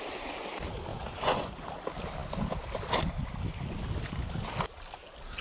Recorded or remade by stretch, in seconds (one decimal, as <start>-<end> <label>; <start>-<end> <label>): 0.0-0.9 recorded; 0.9-1.5 remade; 1.5-5.4 recorded